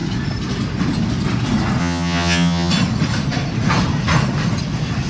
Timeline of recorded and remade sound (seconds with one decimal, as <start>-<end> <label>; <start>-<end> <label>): 0.0-1.8 recorded; 1.8-2.7 remade; 2.7-5.1 recorded